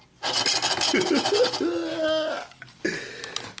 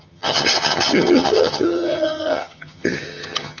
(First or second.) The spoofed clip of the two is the second